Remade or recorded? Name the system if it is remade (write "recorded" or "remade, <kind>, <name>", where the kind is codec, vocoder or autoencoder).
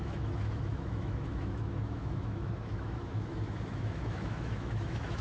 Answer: remade, autoencoder, DAC-VAE